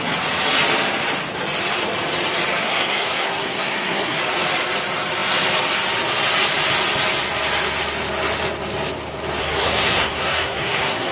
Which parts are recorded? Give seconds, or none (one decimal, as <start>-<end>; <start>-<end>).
0.0-2.6; 4.2-9.4